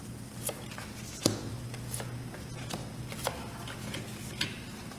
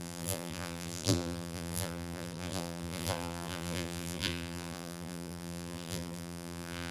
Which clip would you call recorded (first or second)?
first